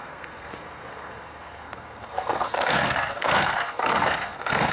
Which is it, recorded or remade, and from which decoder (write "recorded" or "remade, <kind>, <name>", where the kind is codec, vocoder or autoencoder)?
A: remade, codec, SNAC